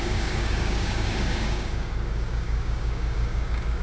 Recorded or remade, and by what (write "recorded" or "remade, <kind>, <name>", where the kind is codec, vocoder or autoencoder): remade, codec, DAC